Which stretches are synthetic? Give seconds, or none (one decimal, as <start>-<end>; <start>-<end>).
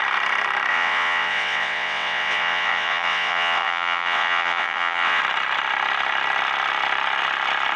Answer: 0.7-5.2